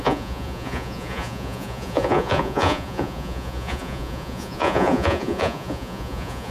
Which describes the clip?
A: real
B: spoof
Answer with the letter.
B